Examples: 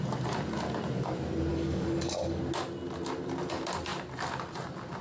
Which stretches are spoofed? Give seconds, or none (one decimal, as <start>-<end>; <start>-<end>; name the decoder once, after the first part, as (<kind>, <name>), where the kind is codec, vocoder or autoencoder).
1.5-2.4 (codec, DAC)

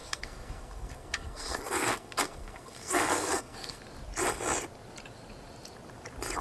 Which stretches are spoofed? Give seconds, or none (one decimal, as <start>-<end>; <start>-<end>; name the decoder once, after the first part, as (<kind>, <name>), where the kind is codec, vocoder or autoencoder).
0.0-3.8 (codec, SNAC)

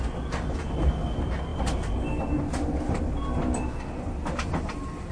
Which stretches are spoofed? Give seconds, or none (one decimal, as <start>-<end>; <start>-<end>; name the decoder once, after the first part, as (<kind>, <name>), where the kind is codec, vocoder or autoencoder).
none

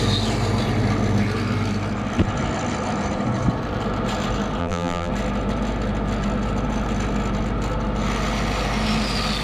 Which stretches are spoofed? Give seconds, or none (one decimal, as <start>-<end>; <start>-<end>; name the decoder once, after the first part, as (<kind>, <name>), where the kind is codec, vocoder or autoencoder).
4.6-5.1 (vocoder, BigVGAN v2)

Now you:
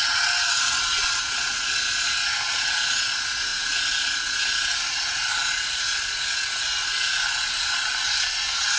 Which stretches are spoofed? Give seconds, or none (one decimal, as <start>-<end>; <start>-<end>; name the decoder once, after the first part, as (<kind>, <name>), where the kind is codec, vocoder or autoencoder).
none

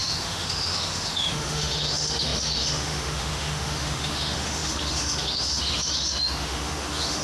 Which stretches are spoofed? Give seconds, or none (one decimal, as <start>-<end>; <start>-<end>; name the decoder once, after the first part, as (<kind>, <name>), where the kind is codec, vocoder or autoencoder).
0.0-7.2 (autoencoder, DAC-VAE)

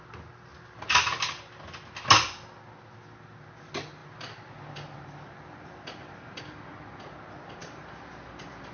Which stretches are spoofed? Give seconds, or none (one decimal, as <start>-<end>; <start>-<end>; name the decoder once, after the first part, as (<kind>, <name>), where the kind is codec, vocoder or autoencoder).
4.0-6.4 (vocoder, BigVGAN v2); 7.6-8.7

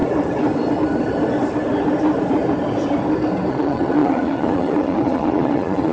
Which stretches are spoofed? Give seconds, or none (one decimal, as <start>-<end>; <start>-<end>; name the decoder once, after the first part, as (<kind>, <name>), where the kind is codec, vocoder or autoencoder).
3.5-5.9 (vocoder, Vocos)